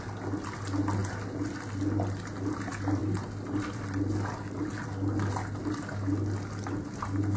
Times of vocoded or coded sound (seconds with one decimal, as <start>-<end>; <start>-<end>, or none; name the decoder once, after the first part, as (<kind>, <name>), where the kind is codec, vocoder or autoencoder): none